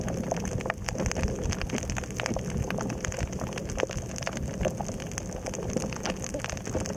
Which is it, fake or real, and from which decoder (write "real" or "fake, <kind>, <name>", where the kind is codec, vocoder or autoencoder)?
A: real